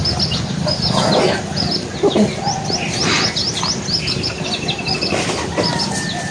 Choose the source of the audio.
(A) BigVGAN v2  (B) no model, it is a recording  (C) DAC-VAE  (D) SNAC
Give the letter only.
B